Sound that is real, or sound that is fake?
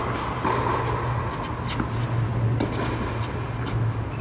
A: real